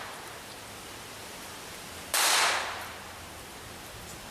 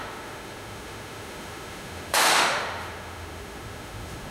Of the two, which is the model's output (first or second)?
second